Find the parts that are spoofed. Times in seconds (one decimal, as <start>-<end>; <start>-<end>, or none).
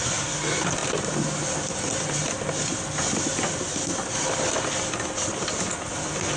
0.8-2.5